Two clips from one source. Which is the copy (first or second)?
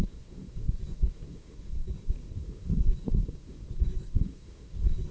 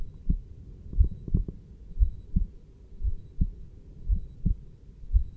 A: first